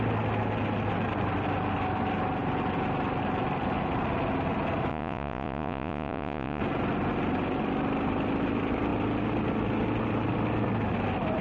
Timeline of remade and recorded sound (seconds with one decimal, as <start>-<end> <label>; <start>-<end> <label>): 0.0-4.9 recorded; 4.9-6.6 remade; 6.6-11.4 recorded